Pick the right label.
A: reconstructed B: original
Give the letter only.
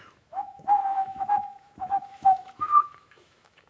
A